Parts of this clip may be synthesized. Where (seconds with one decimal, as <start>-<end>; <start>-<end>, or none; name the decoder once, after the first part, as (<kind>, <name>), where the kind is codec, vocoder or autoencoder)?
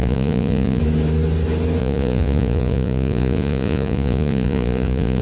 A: 0.0-0.8 (vocoder, Vocos); 1.8-5.2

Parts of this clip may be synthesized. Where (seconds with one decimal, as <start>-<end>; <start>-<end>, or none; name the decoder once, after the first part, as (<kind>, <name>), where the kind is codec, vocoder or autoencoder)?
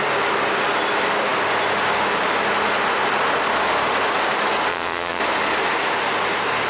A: 4.7-5.2 (vocoder, Vocos)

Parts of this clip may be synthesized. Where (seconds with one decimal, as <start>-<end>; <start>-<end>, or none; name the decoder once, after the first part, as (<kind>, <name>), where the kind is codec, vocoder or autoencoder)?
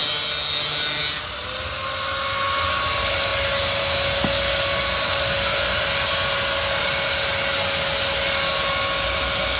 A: none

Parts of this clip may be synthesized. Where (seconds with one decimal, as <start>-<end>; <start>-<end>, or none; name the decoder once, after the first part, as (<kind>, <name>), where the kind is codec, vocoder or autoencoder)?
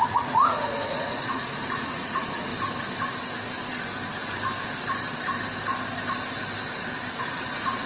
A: 0.0-2.5 (vocoder, Vocos); 7.2-7.9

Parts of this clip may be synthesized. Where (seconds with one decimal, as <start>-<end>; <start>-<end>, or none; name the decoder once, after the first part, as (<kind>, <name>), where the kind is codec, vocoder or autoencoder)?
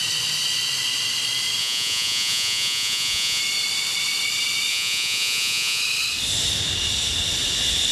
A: 1.6-3.4 (vocoder, Vocos); 4.7-5.8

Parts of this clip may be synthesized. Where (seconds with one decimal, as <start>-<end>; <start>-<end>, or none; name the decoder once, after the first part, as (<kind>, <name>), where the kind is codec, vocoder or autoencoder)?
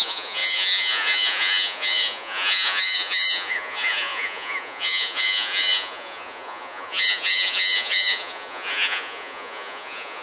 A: 0.0-10.2 (vocoder, Vocos)